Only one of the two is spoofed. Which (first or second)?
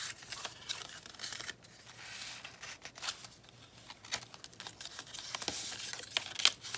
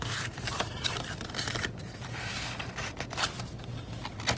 second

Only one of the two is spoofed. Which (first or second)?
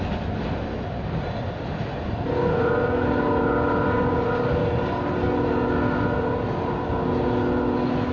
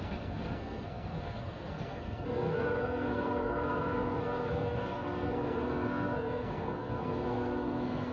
second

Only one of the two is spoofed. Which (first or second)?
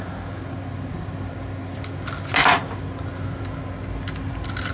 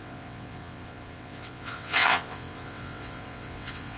second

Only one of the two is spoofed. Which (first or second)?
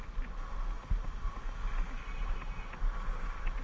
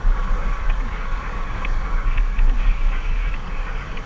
second